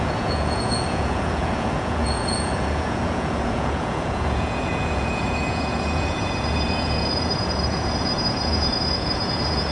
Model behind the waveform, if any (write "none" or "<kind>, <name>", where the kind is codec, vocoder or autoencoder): vocoder, Vocos